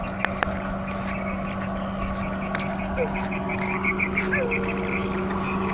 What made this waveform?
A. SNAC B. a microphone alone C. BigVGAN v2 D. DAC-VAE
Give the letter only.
B